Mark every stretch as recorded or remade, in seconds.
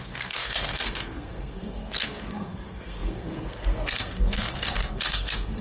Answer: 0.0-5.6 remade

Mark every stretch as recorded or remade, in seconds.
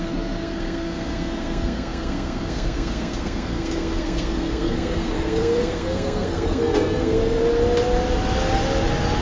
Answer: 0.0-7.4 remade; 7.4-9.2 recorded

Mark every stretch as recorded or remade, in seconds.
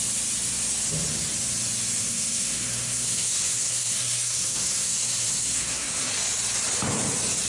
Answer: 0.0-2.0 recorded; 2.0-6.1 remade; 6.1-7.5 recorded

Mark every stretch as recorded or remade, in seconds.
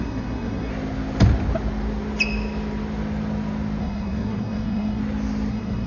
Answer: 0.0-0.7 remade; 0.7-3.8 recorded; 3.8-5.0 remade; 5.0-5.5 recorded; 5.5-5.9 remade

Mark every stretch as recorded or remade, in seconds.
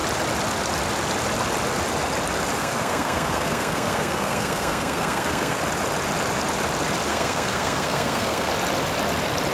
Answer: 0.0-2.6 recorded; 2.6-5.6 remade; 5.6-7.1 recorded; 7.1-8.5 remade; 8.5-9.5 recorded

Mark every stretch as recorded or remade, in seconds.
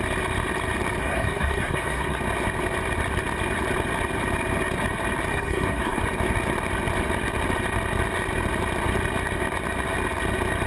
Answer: 0.0-1.0 recorded; 1.0-2.2 remade; 2.2-5.3 recorded; 5.3-6.0 remade; 6.0-10.7 recorded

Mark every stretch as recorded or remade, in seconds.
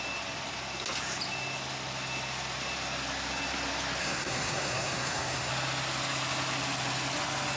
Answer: 0.0-4.0 recorded; 4.0-5.5 remade; 5.5-7.6 recorded